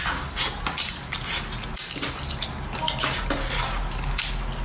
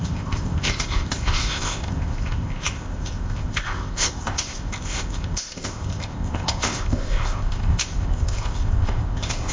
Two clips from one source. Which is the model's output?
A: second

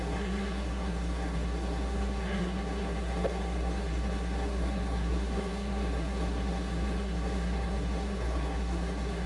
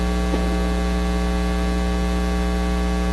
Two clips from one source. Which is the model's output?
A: first